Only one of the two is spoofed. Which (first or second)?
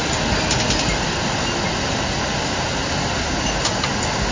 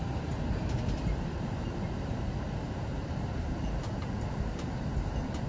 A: second